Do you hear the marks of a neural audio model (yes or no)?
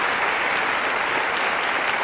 no